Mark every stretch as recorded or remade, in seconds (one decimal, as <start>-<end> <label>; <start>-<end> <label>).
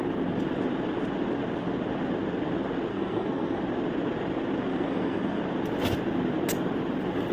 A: 0.0-2.9 recorded; 2.9-3.6 remade; 3.6-4.7 recorded; 4.7-5.4 remade; 5.4-7.3 recorded